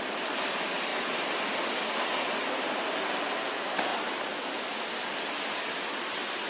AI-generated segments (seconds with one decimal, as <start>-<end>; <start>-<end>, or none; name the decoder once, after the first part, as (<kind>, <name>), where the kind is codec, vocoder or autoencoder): none